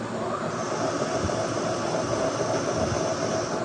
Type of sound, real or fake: real